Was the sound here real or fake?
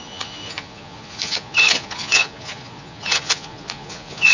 fake